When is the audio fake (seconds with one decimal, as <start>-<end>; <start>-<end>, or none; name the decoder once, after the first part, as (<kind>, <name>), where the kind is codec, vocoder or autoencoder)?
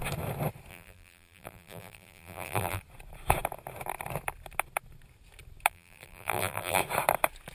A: 0.7-2.8 (vocoder, BigVGAN v2); 5.7-6.8